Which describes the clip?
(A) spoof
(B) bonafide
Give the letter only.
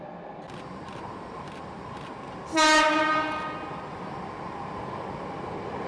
B